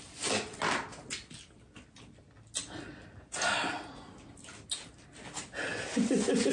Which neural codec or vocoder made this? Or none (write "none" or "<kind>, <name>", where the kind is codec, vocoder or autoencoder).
none